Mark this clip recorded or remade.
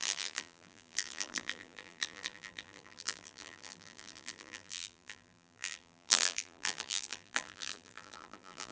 remade